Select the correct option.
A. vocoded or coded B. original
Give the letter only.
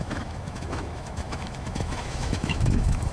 A